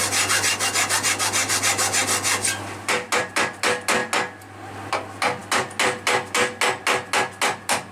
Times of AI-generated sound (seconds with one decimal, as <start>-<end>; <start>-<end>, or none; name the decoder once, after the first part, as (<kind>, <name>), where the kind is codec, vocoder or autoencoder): none